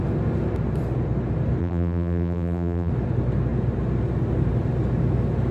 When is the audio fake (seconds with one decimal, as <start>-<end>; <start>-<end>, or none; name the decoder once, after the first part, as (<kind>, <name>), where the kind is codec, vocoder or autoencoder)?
1.6-2.9 (vocoder, BigVGAN v2)